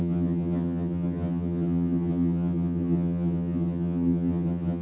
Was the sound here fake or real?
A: fake